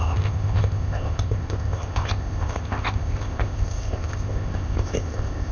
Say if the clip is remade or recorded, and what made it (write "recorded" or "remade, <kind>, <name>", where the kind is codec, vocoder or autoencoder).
remade, codec, ZipCodec